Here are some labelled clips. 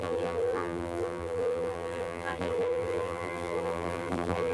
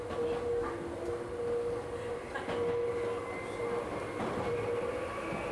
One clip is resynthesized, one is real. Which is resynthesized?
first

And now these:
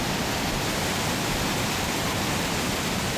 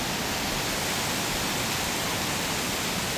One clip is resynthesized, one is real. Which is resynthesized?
first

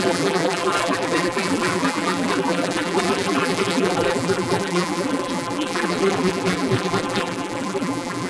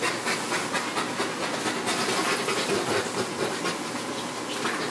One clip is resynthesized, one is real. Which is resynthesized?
first